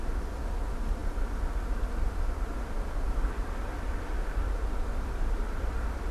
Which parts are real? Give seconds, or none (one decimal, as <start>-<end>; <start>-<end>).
0.0-6.1